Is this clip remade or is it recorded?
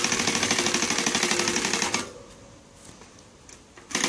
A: recorded